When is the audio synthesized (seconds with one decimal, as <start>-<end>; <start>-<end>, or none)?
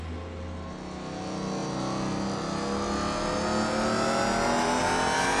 none